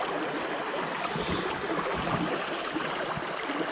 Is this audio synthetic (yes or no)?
no